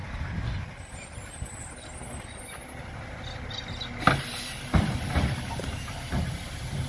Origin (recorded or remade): recorded